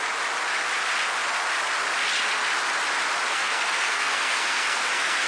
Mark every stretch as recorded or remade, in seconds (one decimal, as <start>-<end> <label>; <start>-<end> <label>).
0.0-3.3 recorded; 3.3-5.3 remade